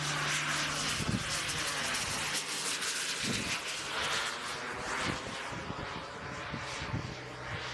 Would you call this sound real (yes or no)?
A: yes